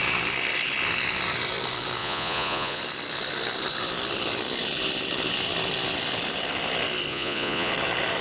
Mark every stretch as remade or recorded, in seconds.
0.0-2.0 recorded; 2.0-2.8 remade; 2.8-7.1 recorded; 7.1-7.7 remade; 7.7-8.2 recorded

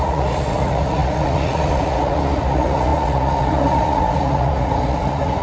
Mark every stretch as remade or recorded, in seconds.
0.0-5.4 remade